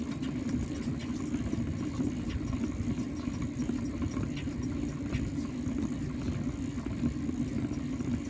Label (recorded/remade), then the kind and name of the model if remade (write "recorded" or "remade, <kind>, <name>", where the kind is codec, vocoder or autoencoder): recorded